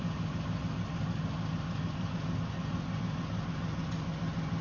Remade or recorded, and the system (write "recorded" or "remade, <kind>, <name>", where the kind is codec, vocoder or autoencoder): recorded